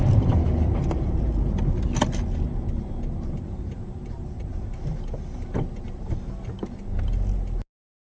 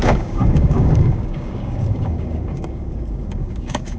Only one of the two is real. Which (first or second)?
first